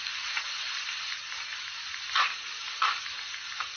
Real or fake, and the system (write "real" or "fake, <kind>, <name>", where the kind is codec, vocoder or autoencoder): real